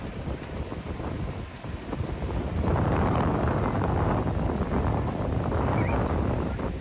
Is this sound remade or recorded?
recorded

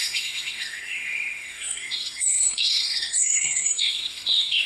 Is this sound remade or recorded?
remade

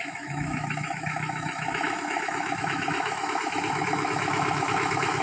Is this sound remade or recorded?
remade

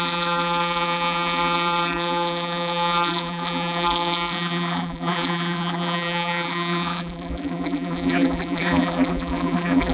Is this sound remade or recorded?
remade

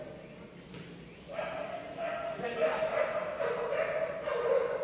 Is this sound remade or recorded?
recorded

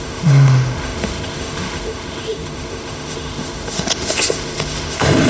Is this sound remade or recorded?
remade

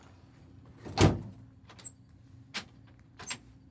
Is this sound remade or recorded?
recorded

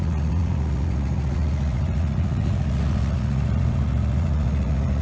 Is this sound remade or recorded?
remade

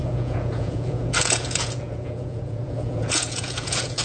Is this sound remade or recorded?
remade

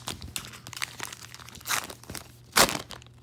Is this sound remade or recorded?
recorded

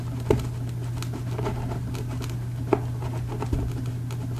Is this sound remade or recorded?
recorded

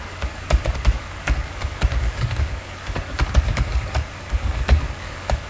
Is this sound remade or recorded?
remade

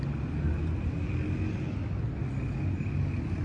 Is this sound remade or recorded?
recorded